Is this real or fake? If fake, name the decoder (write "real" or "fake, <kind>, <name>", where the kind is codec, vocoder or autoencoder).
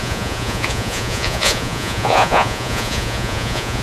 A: fake, vocoder, Vocos